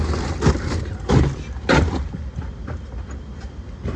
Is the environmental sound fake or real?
real